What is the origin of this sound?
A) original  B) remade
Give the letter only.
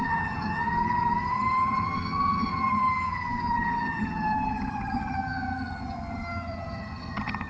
B